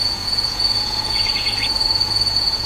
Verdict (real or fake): fake